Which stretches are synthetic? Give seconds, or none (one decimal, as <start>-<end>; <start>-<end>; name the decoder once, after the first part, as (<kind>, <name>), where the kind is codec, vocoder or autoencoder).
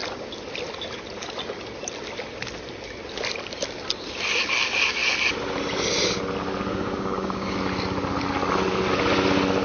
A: 6.7-7.6 (codec, DAC)